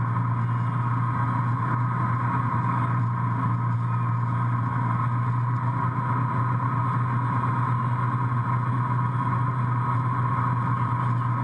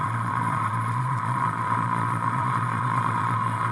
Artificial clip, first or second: second